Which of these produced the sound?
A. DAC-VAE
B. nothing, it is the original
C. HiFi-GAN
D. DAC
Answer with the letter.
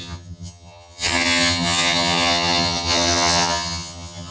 C